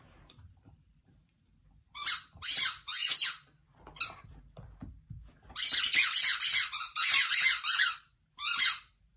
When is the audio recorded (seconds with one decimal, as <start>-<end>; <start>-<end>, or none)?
3.0-6.7

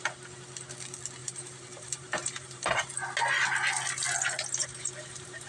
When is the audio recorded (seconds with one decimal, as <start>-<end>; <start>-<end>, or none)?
0.0-1.2; 2.9-4.6

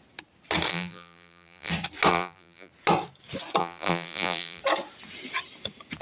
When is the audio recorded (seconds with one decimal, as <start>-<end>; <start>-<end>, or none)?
0.0-0.7; 1.7-2.1; 2.7-3.6; 4.6-6.0

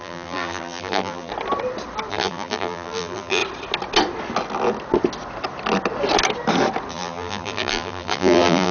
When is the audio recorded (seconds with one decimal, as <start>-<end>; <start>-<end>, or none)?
1.3-2.1; 3.4-6.9

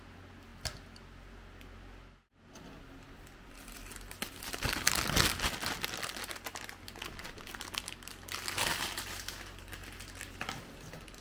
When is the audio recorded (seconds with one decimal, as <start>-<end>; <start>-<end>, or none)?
0.0-11.2

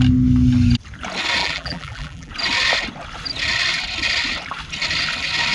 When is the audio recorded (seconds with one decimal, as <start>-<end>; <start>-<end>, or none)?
0.0-1.4; 2.3-5.5

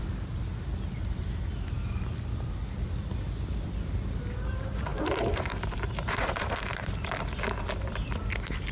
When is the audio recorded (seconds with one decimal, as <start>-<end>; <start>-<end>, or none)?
0.0-4.9; 6.8-8.7